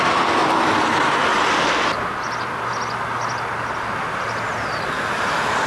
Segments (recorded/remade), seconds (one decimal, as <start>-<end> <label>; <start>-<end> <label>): 0.0-5.7 recorded